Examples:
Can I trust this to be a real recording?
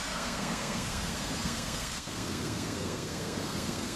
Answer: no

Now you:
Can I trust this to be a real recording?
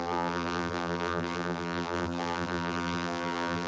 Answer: no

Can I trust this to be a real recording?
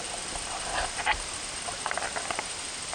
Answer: no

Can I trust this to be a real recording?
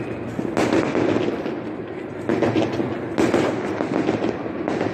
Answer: yes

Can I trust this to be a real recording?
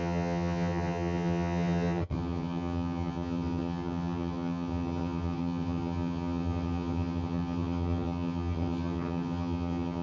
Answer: no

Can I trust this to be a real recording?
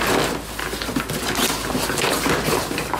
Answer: yes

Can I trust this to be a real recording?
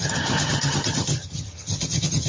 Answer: no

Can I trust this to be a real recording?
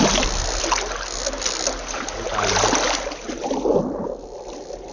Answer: yes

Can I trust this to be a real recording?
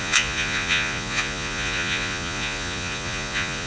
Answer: no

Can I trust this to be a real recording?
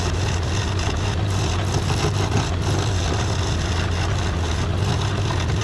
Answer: yes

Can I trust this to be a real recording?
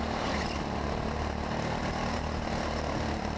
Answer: yes